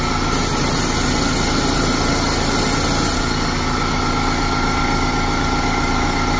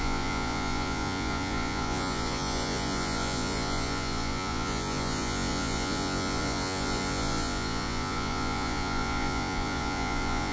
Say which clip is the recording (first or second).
first